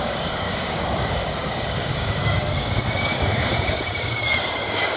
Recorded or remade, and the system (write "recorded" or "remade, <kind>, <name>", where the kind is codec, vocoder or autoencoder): remade, codec, DAC